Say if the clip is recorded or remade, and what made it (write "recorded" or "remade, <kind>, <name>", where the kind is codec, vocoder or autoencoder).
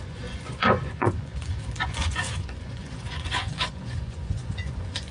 remade, vocoder, Vocos